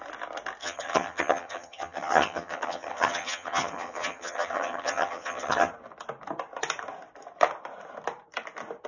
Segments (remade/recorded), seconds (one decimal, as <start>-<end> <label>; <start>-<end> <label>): 0.0-0.6 recorded; 0.6-5.7 remade; 5.7-8.9 recorded